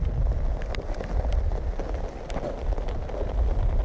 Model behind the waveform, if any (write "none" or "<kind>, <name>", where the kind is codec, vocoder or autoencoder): none